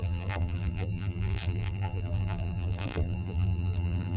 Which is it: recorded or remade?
remade